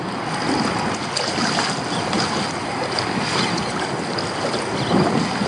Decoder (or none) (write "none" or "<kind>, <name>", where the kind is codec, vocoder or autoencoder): none